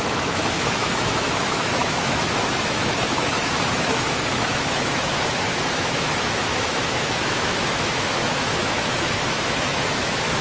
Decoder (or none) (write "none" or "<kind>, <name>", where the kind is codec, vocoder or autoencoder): autoencoder, DAC-VAE